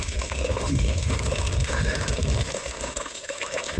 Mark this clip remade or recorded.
remade